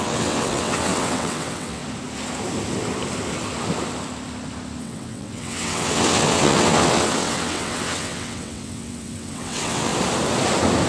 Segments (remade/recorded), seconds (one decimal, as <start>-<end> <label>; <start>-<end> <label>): 0.0-1.8 remade; 1.8-4.8 recorded; 4.8-9.9 remade; 9.9-10.9 recorded